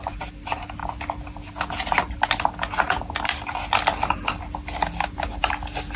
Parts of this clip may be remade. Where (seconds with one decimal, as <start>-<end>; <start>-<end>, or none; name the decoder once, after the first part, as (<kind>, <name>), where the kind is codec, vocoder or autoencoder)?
none